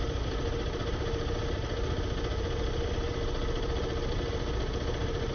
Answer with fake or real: real